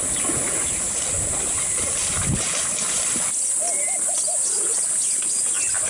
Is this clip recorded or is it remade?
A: recorded